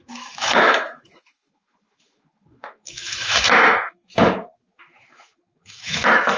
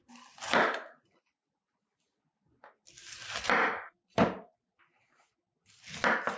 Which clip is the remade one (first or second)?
first